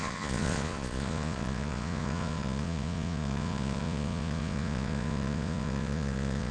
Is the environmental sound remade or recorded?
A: remade